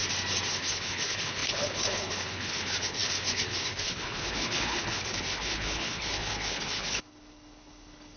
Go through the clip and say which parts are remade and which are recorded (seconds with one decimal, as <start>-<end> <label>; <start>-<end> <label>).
0.0-0.5 recorded; 0.5-8.2 remade